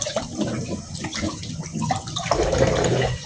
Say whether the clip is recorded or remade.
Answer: recorded